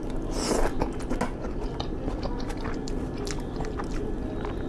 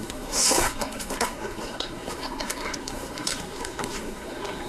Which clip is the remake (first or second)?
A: second